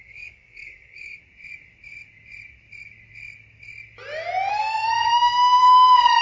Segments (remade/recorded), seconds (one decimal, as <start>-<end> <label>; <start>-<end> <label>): 0.0-1.2 remade; 1.2-4.5 recorded; 4.5-6.2 remade